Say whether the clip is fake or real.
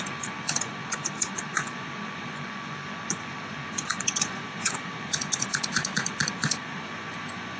fake